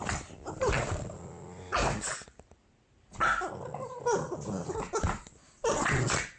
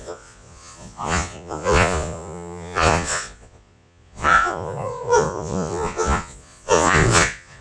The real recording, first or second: first